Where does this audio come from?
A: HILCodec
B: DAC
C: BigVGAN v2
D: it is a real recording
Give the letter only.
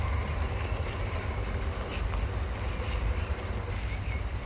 D